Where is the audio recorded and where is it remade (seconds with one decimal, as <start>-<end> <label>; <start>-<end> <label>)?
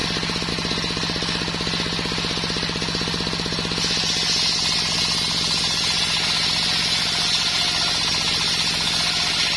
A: 0.0-9.6 recorded